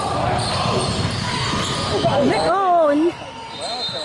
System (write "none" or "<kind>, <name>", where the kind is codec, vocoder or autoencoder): none